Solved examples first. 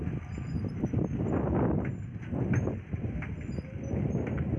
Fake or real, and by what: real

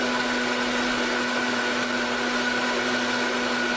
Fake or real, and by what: real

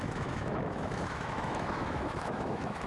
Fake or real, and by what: fake, autoencoder, DAC-VAE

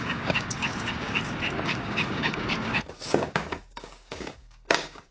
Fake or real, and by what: fake, codec, DAC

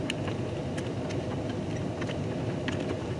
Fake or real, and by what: real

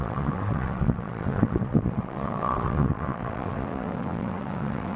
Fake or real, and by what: fake, vocoder, WaveNeXt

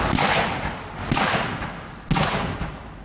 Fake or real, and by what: real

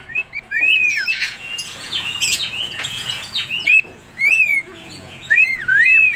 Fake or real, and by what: fake, vocoder, Vocos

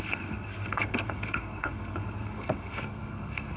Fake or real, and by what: fake, codec, SNAC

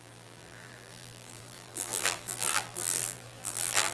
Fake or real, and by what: fake, vocoder, BigVGAN v2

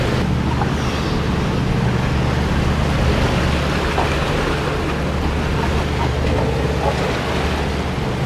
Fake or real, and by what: real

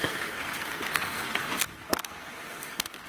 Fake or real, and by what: fake, codec, SNAC